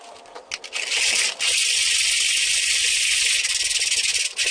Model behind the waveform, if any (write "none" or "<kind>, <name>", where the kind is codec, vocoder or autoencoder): none